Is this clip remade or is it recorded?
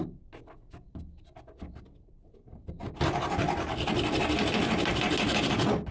recorded